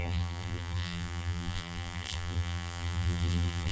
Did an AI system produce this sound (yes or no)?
yes